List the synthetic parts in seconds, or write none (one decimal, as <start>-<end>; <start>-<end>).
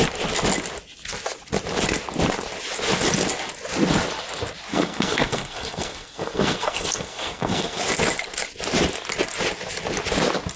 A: 4.7-7.8